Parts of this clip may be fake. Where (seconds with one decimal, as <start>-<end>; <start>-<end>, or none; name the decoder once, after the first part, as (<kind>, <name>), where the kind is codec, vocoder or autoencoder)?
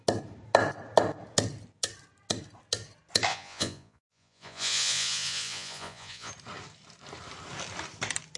3.3-6.3 (vocoder, Vocos)